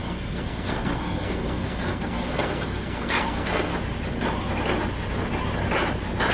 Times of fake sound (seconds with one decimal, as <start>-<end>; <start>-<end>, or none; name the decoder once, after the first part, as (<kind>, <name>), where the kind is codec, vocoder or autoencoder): 0.0-3.7 (codec, SNAC)